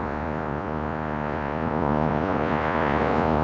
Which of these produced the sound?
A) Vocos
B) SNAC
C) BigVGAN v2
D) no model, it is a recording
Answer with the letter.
A